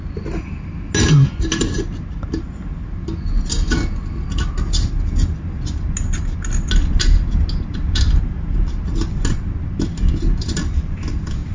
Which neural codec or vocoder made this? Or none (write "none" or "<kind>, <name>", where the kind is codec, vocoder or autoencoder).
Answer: none